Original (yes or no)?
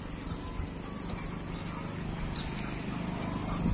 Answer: yes